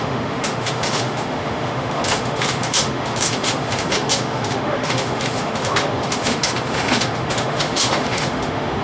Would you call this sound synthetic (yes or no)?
yes